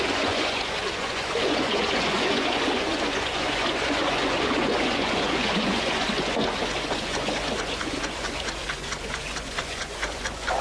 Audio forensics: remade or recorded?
remade